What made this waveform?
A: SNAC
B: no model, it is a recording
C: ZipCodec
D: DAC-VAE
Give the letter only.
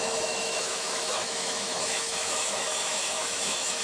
D